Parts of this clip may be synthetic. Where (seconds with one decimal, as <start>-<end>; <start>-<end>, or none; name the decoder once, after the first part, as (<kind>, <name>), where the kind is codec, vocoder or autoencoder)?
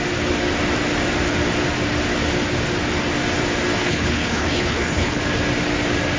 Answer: 3.8-5.2 (codec, HILCodec)